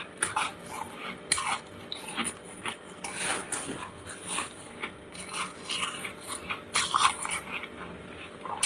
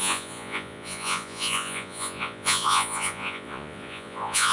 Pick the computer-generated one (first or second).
second